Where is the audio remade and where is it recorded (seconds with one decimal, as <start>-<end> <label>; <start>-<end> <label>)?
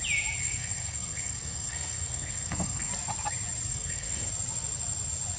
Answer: 0.0-0.4 recorded; 0.4-2.9 remade; 2.9-3.7 recorded; 3.7-4.3 remade; 4.3-5.4 recorded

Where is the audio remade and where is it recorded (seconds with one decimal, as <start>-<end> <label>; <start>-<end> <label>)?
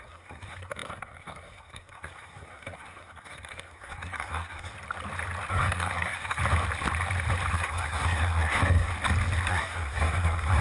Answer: 0.0-4.7 remade; 4.7-5.5 recorded; 5.5-6.4 remade; 6.4-7.5 recorded; 7.5-8.9 remade; 8.9-9.5 recorded; 9.5-10.6 remade